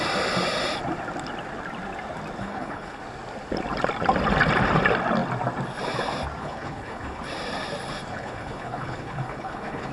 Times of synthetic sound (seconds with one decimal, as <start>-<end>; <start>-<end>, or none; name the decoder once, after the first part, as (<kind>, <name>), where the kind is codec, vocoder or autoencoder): 2.4-3.0 (codec, HILCodec); 6.4-7.2; 8.1-9.9